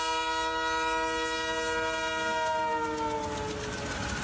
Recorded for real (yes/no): yes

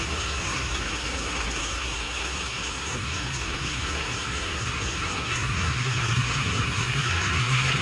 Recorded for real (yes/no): no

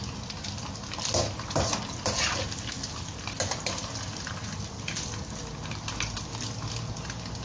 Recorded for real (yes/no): yes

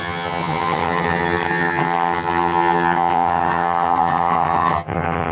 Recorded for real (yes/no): no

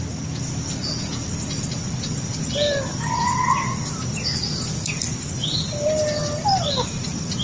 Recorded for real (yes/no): yes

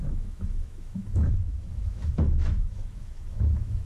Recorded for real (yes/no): no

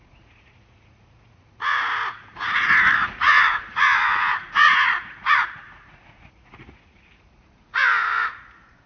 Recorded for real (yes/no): no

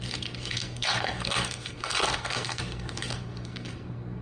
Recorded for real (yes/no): no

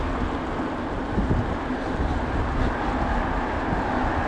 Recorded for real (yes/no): yes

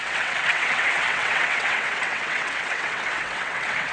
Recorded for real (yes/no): no